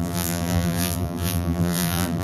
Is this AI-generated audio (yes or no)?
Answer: yes